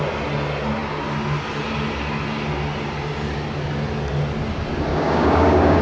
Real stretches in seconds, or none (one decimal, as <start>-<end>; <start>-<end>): 0.0-4.9